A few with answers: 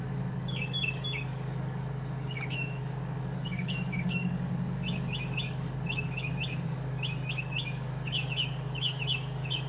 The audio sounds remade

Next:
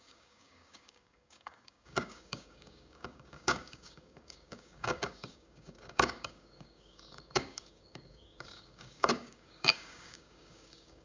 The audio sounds remade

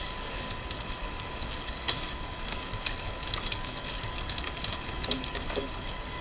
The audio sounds remade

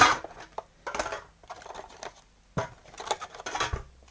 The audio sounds recorded